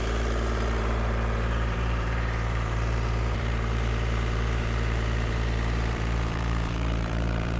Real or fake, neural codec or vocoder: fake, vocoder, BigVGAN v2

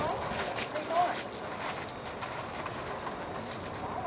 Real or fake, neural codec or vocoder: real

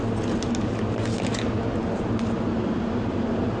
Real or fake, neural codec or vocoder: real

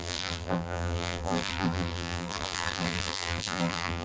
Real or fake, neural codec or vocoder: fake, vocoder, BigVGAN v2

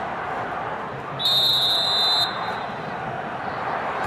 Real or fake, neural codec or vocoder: real